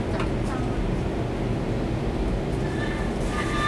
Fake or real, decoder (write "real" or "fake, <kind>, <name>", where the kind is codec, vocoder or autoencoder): real